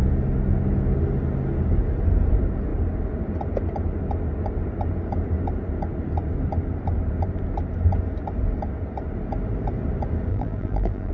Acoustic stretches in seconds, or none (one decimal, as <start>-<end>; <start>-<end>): 0.0-10.3